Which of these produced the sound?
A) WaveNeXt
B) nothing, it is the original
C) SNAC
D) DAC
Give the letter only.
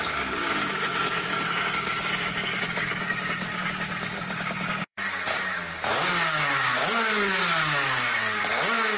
D